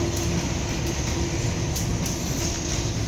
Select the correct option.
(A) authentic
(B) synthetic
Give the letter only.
A